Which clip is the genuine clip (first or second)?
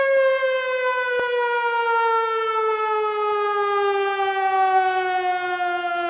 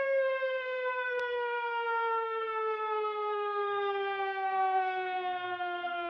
first